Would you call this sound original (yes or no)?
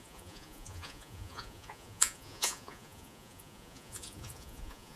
no